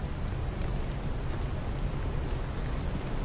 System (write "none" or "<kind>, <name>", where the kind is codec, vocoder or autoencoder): none